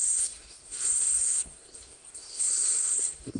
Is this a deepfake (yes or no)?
yes